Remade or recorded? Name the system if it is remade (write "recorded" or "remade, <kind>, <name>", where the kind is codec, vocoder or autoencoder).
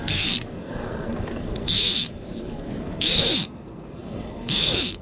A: remade, codec, SNAC